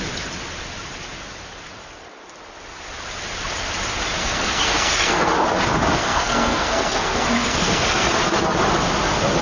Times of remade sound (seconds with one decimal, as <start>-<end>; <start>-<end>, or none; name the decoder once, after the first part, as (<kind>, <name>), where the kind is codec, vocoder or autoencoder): 4.2-5.3 (codec, SNAC); 6.0-8.1